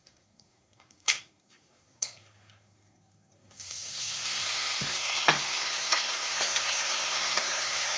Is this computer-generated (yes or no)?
yes